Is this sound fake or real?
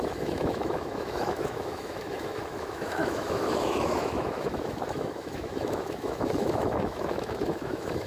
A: fake